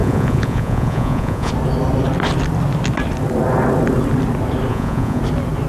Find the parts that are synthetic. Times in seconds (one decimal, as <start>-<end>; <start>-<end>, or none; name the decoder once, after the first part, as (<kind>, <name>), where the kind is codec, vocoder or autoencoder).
0.0-1.5 (vocoder, Vocos); 4.7-5.2